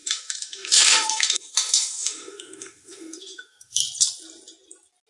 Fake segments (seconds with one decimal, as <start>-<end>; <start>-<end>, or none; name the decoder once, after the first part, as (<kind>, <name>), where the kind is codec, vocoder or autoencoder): 0.0-3.8 (autoencoder, DAC-VAE)